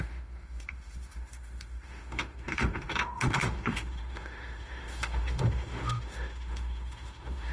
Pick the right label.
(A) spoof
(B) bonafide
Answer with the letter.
A